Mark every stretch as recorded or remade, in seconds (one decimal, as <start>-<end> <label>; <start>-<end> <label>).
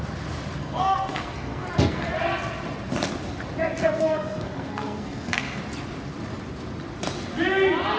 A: 0.0-0.6 recorded; 0.6-2.1 remade; 2.1-3.8 recorded; 3.8-5.6 remade; 5.6-8.0 recorded